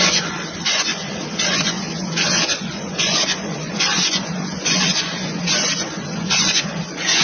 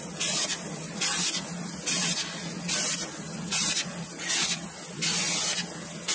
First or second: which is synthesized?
first